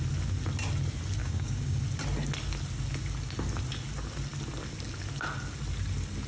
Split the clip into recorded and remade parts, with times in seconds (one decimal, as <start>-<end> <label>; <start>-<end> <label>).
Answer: 0.0-1.2 recorded; 1.2-1.8 remade; 1.8-6.3 recorded